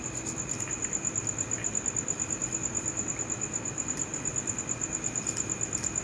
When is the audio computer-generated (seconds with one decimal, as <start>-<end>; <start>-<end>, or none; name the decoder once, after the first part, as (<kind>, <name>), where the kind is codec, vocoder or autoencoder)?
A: none